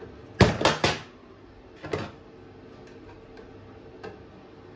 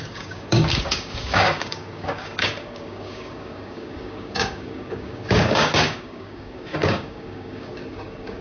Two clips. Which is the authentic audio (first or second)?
first